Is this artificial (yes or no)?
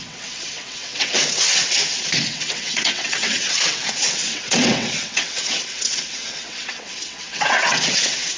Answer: yes